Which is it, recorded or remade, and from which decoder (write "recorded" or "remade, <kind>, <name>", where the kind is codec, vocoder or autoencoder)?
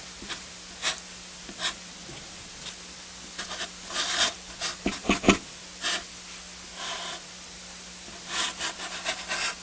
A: recorded